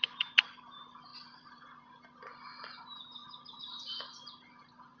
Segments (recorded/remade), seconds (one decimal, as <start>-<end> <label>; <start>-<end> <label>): 0.0-1.1 recorded; 1.1-1.8 remade; 1.8-3.2 recorded; 3.2-4.3 remade; 4.3-5.0 recorded